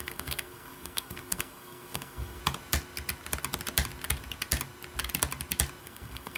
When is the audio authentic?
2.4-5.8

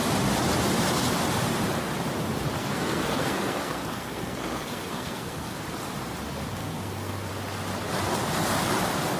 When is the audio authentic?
0.0-2.6; 5.6-6.6; 7.3-9.2

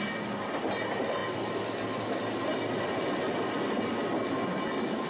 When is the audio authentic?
0.0-5.1